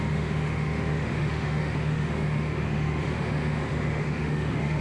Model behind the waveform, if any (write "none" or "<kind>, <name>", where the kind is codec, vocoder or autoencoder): autoencoder, DAC-VAE